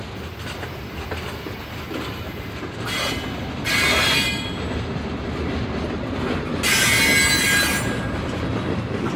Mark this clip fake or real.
real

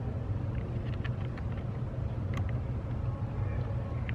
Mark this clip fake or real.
real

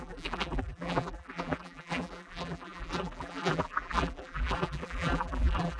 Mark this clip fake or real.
fake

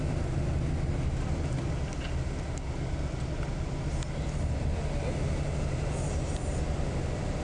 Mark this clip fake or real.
real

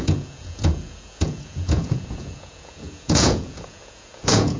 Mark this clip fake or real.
fake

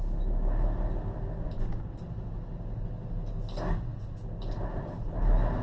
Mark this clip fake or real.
real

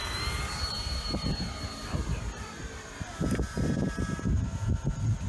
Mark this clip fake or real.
fake